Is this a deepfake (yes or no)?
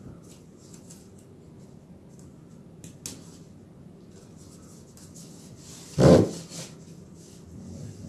no